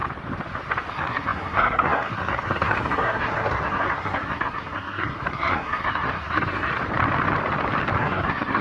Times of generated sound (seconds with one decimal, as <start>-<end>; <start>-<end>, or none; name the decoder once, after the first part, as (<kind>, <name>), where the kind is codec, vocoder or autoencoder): 0.9-6.7 (codec, SNAC); 8.0-8.6